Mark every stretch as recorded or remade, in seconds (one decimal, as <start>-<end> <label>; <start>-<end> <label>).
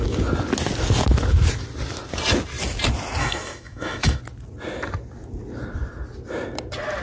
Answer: 0.0-3.2 recorded; 3.2-4.2 remade; 4.2-7.0 recorded